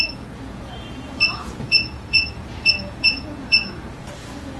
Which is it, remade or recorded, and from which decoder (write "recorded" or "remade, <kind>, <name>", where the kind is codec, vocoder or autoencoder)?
remade, vocoder, Vocos